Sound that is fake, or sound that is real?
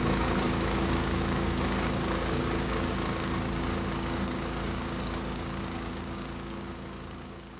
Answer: fake